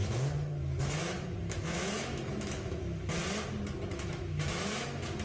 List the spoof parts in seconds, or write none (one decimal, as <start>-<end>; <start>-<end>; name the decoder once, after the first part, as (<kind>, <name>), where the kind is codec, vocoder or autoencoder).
0.0-3.2 (autoencoder, DAC-VAE); 3.9-5.2